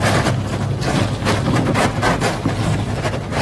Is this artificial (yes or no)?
no